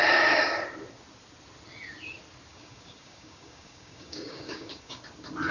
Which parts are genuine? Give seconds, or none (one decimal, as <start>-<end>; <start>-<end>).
0.0-2.5; 5.0-5.5